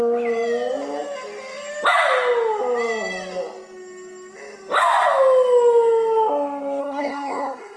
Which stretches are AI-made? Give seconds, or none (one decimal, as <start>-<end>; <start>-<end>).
6.8-7.8